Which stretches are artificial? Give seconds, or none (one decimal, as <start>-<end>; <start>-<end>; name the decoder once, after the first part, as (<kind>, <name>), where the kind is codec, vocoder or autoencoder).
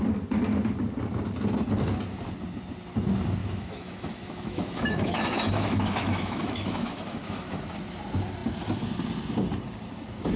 3.4-7.6 (autoencoder, DAC-VAE)